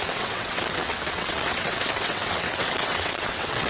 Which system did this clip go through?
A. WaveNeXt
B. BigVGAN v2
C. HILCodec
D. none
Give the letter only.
A